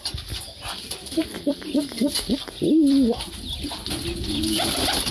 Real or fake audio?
real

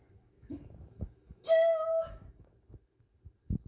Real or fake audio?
fake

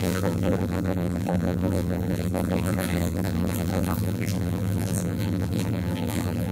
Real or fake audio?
fake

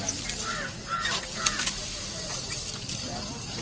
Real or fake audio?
real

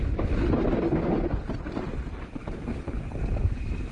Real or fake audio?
real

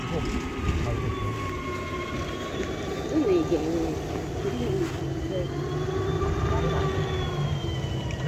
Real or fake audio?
real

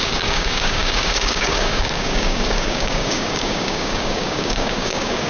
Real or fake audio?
fake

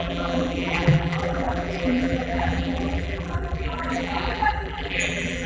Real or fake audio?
fake